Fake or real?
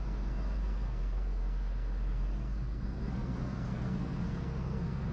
fake